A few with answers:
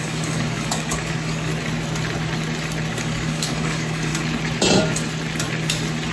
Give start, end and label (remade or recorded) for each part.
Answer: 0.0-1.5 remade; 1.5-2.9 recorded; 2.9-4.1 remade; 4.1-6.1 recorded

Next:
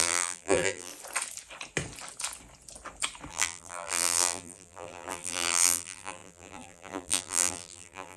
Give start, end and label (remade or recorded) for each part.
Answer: 0.0-0.9 remade; 0.9-3.3 recorded; 3.3-8.2 remade

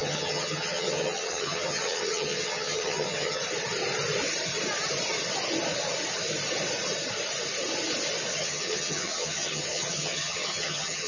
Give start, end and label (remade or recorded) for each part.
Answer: 0.0-3.4 remade; 3.4-8.3 recorded; 8.3-11.1 remade

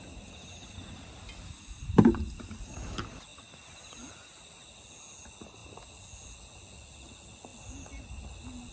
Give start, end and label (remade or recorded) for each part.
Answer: 0.0-8.7 recorded